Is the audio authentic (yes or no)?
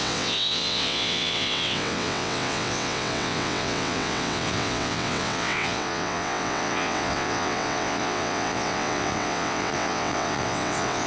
no